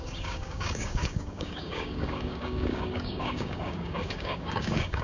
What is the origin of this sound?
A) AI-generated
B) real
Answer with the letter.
A